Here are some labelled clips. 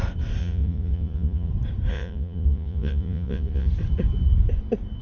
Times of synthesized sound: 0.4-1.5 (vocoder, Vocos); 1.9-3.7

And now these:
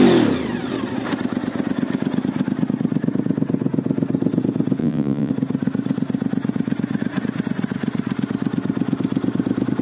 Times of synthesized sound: 4.8-5.3 (vocoder, Vocos)

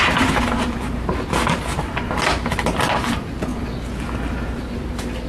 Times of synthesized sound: none